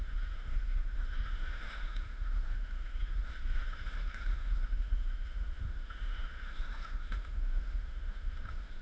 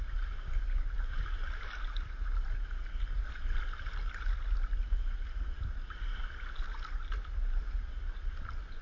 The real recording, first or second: second